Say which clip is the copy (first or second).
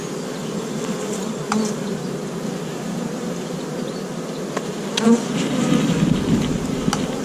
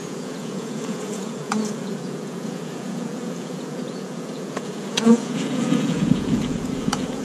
second